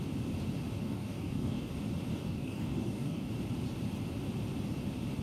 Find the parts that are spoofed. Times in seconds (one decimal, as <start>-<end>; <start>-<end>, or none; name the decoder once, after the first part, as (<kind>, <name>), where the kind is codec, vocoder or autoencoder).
0.8-1.7 (codec, DAC); 2.1-3.3

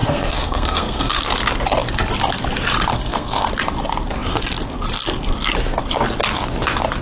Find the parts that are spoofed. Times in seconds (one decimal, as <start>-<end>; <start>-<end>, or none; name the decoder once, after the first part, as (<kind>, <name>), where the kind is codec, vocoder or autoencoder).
0.0-1.2 (codec, SNAC); 2.9-3.5

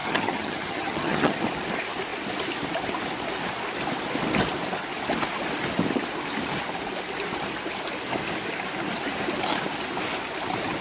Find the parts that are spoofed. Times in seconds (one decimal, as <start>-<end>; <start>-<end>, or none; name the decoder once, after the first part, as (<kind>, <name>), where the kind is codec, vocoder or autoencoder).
0.0-1.4 (vocoder, HiFi-GAN)

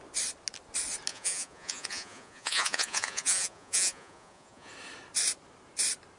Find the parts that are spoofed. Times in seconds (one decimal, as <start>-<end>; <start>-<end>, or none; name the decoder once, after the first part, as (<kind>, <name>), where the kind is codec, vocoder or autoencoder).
1.1-4.7 (vocoder, Vocos)

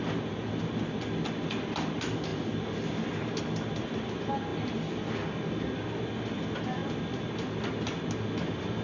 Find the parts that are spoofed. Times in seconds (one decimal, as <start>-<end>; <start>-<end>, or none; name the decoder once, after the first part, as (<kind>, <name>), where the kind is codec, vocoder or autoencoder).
2.3-3.4 (vocoder, BigVGAN v2)